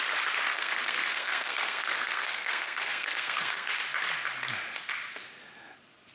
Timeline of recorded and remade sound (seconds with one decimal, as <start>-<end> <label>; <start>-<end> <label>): 0.0-0.5 recorded; 0.5-3.7 remade; 3.7-6.1 recorded